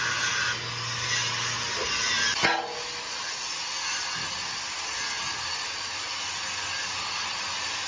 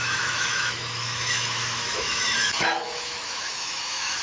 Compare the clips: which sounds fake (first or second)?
second